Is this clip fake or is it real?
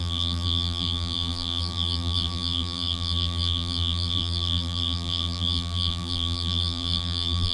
fake